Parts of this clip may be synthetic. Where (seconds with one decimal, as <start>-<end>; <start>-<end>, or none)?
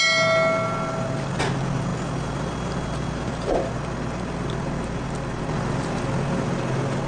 none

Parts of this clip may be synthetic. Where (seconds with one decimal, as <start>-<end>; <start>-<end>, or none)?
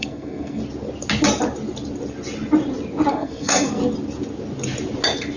0.0-0.6; 3.1-3.8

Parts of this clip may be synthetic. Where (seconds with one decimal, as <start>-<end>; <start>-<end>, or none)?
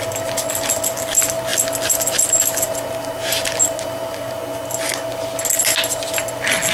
none